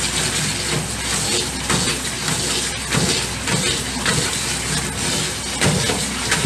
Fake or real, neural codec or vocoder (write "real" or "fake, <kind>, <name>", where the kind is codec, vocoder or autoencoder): real